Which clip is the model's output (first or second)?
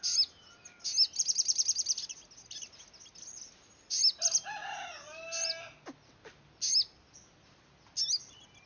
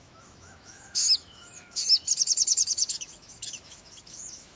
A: second